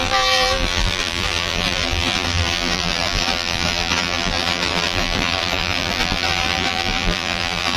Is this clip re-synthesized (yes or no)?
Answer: yes